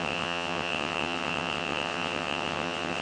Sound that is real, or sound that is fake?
fake